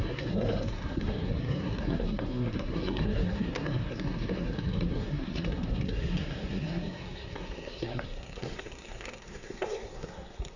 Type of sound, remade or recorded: remade